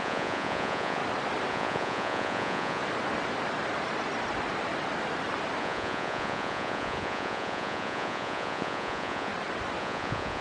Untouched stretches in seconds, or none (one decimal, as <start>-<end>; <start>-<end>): 1.0-1.5; 2.8-5.6; 9.3-9.8